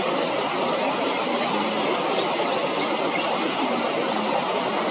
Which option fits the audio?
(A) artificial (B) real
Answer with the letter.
B